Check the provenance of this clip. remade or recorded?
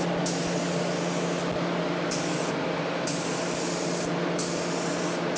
recorded